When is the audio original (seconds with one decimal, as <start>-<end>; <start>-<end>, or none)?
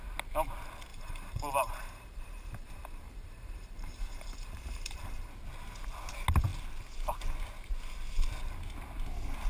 0.0-0.9; 5.3-9.5